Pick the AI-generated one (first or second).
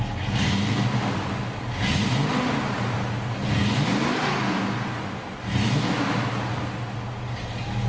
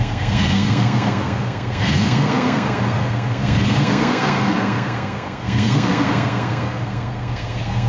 second